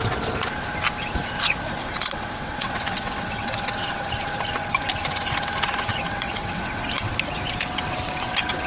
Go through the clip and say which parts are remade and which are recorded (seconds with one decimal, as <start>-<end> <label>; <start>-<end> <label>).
0.0-1.8 recorded; 1.8-4.1 remade; 4.1-5.9 recorded; 5.9-7.1 remade; 7.1-8.7 recorded